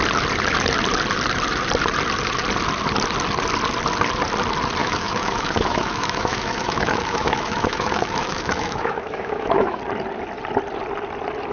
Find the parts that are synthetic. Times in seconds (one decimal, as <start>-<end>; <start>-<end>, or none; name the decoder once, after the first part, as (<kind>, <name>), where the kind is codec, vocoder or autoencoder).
4.8-9.8 (autoencoder, DAC-VAE)